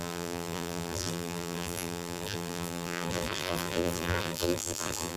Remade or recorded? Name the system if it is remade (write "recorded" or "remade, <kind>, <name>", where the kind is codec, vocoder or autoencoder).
remade, vocoder, BigVGAN v2